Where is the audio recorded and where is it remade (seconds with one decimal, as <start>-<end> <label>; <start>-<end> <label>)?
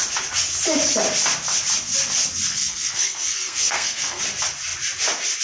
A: 0.0-2.5 recorded; 2.5-4.2 remade; 4.2-5.4 recorded